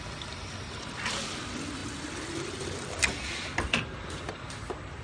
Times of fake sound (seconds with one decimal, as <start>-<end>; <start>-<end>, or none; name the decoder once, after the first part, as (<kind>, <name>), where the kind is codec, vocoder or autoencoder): none